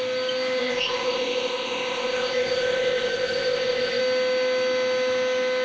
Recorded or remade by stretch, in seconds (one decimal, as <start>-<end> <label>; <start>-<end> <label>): 0.0-0.6 recorded; 0.6-4.0 remade; 4.0-5.6 recorded